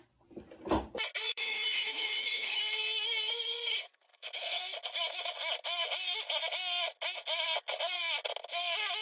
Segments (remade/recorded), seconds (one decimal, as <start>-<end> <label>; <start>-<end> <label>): 0.0-1.3 recorded; 1.3-2.6 remade; 2.6-4.1 recorded; 4.1-4.6 remade; 4.6-9.0 recorded